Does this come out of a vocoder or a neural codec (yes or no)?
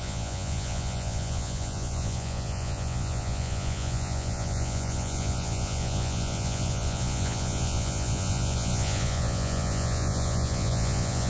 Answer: yes